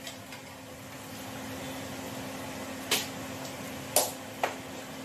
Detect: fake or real real